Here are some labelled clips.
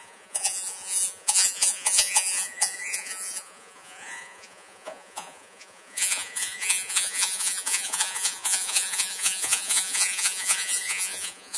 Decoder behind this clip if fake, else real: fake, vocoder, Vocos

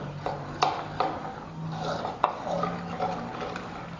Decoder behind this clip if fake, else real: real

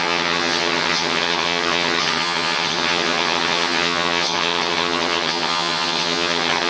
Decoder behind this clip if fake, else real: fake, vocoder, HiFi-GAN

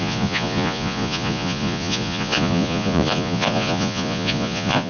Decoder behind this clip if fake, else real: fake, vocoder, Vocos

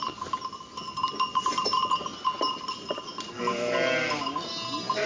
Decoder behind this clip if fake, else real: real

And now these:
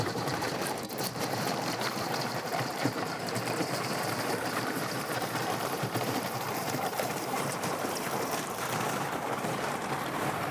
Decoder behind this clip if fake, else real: fake, vocoder, BigVGAN v2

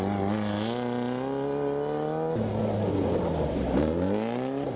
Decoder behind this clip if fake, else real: real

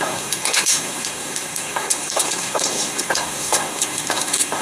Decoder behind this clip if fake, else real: fake, codec, SNAC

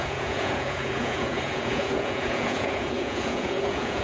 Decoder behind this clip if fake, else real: fake, vocoder, Vocos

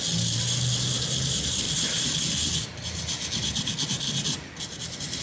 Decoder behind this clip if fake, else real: real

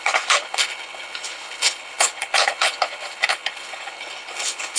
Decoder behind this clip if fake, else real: fake, codec, HILCodec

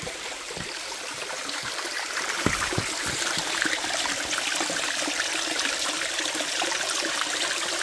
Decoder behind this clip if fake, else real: fake, vocoder, BigVGAN v2